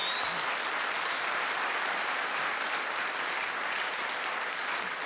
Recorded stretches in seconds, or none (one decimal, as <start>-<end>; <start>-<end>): 0.0-5.1